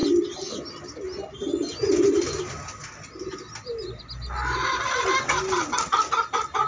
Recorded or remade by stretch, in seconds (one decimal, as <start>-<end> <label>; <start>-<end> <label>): 0.0-6.7 recorded